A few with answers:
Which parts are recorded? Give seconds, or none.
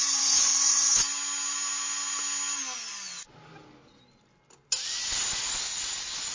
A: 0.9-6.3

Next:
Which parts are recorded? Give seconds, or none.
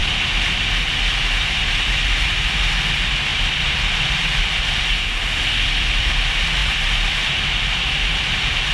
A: 0.0-3.3; 6.1-6.6; 7.7-8.7